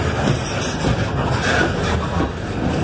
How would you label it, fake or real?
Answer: real